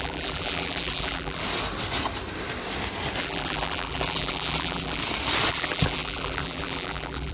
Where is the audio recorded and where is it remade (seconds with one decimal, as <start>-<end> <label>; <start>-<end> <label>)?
0.0-1.4 remade; 1.4-3.2 recorded; 3.2-5.0 remade; 5.0-5.5 recorded; 5.5-7.3 remade